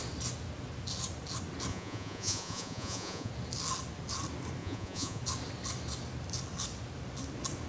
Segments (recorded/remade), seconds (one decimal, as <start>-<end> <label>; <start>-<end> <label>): 0.0-1.7 recorded; 1.7-3.3 remade; 3.3-4.6 recorded; 4.6-5.2 remade; 5.2-7.7 recorded